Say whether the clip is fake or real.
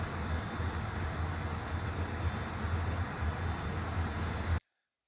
real